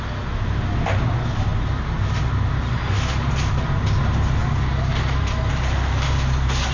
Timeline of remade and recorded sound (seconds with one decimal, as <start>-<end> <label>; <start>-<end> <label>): 0.0-6.7 recorded

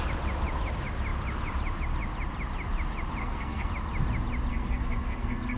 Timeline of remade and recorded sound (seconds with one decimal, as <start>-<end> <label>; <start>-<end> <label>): 0.0-3.2 recorded; 3.2-3.7 remade; 3.7-4.5 recorded; 4.5-5.6 remade